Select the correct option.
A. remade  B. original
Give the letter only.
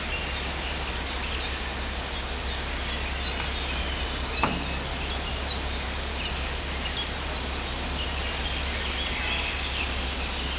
B